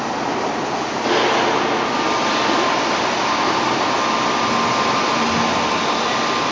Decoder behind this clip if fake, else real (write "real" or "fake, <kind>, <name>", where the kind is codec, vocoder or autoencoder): real